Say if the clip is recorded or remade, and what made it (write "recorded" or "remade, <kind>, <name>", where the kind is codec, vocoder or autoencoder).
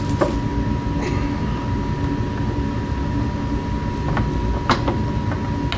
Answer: recorded